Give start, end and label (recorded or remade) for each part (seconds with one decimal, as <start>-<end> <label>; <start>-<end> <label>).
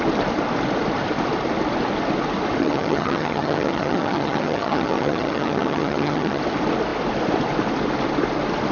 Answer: 0.0-2.6 recorded; 2.6-6.4 remade; 6.4-8.7 recorded